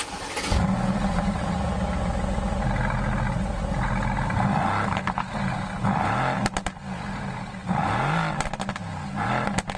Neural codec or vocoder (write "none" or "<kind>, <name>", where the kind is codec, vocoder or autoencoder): none